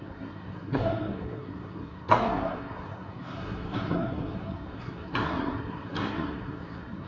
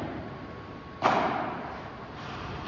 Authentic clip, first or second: second